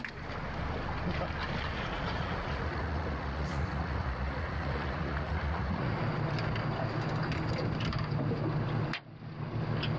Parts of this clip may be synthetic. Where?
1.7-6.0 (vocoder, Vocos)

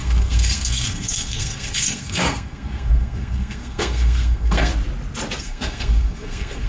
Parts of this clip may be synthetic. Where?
0.0-4.7 (codec, SNAC); 5.4-6.7

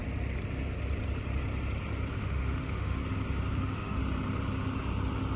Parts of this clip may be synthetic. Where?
2.1-3.0 (autoencoder, DAC-VAE); 3.6-4.0